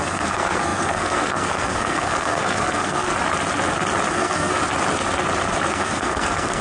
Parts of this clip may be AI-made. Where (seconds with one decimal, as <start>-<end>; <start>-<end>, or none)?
0.0-3.1; 4.1-4.6; 5.7-6.6